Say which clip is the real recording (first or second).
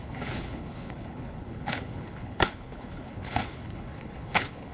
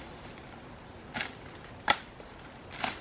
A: second